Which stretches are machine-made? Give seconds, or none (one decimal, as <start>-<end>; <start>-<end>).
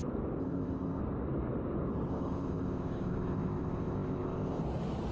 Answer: 0.4-1.0; 2.1-4.6